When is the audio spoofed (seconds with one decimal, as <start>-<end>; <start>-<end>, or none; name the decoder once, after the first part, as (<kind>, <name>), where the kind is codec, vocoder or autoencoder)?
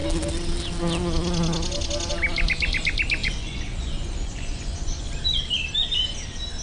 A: 3.2-5.1 (vocoder, Vocos)